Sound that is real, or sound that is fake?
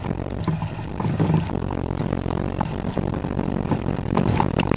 fake